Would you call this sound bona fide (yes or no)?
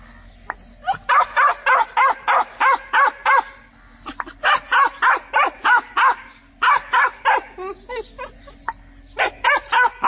yes